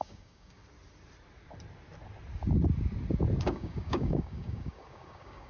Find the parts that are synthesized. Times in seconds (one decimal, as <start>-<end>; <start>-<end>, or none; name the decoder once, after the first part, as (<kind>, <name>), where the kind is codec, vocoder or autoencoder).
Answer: 0.0-0.6 (codec, DAC); 3.4-5.5

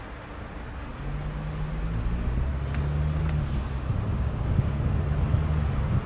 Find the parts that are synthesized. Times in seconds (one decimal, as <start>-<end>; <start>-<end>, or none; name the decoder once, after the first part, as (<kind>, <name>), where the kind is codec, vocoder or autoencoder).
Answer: 4.1-4.9 (codec, DAC)

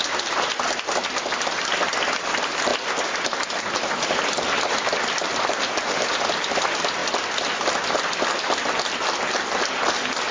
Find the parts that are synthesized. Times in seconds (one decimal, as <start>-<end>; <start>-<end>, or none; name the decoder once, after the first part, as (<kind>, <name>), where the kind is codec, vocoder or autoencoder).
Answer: none

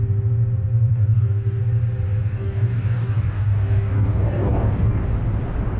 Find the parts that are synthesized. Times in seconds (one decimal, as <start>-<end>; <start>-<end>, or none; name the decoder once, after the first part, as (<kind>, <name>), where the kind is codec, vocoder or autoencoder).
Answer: 0.9-1.6 (codec, DAC); 2.2-5.0

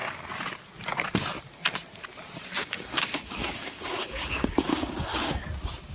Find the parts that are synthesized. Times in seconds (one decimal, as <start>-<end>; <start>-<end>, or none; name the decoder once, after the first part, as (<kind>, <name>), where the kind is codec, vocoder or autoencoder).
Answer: 2.6-5.4 (codec, DAC)

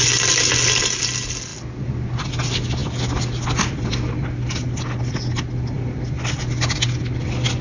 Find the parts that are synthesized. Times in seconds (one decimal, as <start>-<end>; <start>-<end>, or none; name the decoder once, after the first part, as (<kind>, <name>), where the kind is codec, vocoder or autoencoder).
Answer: none

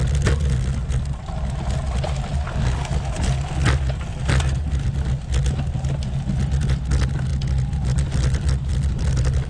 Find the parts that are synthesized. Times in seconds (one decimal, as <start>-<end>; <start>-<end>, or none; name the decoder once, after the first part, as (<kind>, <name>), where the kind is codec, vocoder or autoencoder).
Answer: none

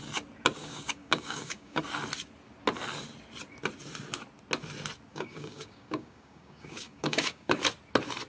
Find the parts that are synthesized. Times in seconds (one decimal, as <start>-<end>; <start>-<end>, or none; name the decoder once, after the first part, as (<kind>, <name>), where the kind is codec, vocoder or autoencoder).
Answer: 0.6-1.8 (codec, DAC); 5.1-7.6